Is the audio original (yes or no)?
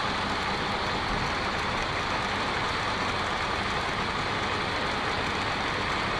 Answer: yes